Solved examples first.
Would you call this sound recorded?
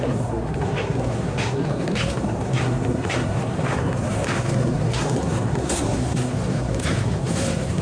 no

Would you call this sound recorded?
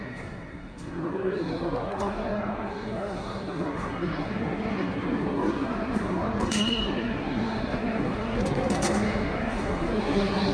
no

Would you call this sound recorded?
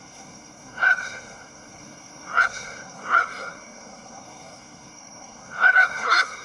no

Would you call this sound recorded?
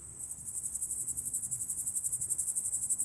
no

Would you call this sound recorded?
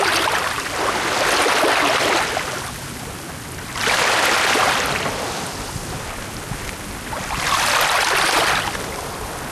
yes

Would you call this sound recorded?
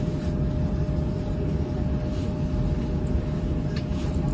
yes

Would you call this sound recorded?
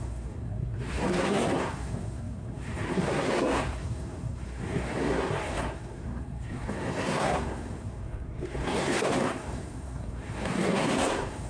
no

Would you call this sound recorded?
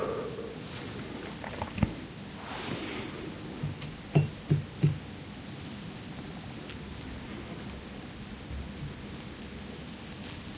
yes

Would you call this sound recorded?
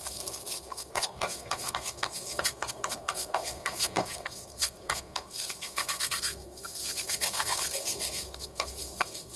no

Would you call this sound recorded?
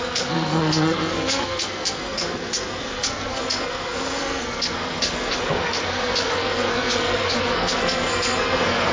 no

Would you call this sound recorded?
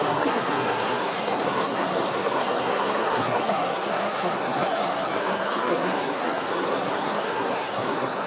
no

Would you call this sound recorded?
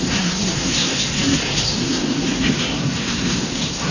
no